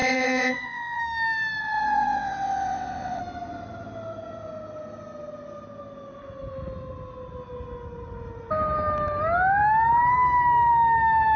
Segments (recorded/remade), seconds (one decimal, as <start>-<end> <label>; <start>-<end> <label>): 0.0-1.0 remade; 1.0-1.6 recorded; 1.6-3.2 remade; 3.2-11.4 recorded